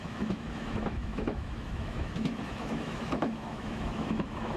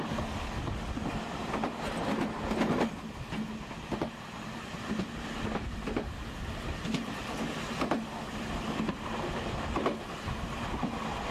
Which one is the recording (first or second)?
second